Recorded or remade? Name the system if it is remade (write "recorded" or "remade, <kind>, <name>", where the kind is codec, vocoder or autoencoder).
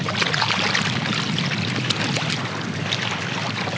recorded